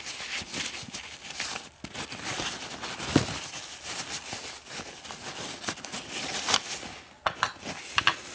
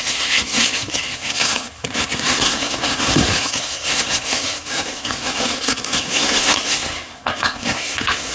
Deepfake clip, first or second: second